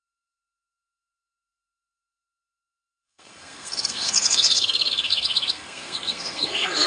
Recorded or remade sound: remade